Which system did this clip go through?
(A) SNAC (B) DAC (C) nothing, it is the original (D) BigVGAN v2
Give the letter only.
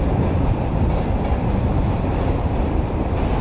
C